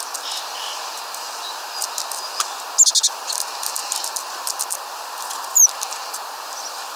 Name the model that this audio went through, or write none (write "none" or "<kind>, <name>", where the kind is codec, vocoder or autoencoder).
none